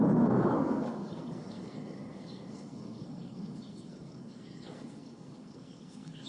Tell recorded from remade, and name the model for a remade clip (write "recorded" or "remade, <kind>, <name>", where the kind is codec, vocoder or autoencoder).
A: remade, codec, SNAC